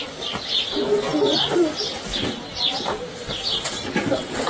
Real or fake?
real